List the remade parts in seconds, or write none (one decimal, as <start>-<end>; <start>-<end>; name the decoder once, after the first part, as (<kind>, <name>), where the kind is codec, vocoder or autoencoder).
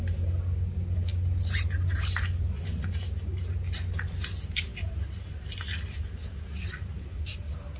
none